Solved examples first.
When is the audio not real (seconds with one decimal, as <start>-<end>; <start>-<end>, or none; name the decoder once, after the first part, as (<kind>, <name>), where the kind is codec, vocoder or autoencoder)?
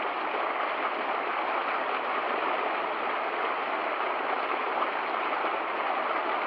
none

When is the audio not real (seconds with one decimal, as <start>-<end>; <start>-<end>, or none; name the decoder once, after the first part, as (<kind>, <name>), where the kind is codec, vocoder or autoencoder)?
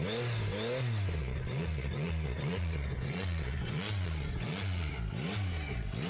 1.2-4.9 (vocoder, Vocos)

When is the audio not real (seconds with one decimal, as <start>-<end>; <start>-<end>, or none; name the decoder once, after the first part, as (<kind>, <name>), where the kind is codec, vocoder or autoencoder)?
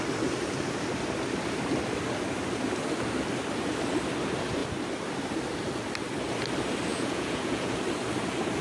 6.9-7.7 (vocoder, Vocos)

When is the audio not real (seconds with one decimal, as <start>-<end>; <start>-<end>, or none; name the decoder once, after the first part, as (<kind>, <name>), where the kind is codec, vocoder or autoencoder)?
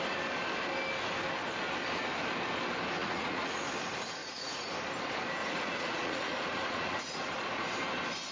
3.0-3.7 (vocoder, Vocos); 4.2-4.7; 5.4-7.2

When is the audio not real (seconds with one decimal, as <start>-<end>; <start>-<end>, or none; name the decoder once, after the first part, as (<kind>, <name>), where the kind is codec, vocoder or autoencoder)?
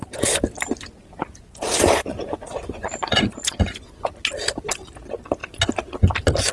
2.1-4.1 (vocoder, Vocos)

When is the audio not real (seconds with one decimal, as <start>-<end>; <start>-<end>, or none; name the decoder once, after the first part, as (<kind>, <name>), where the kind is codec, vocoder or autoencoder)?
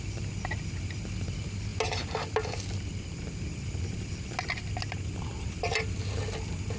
none